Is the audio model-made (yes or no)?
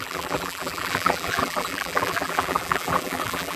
yes